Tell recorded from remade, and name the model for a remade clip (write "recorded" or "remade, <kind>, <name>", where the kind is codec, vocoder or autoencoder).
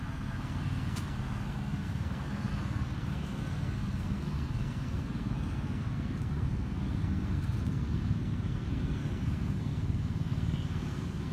remade, codec, SNAC